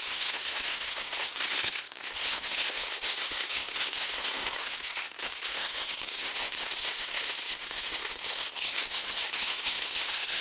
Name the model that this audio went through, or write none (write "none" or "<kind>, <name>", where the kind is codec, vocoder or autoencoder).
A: codec, SNAC